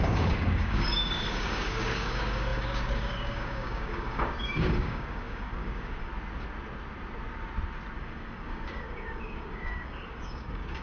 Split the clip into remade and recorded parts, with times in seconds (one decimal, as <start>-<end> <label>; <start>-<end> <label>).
0.0-6.1 remade; 6.1-8.0 recorded; 8.0-10.8 remade